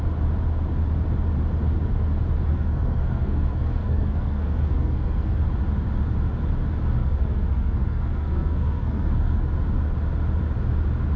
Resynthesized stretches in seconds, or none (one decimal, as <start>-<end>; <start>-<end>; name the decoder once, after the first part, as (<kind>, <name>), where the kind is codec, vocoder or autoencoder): 2.5-5.4 (codec, SNAC); 7.0-9.5